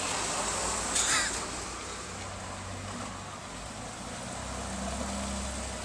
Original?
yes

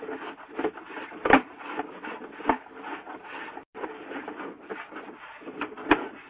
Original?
yes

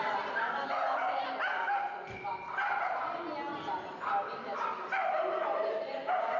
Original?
yes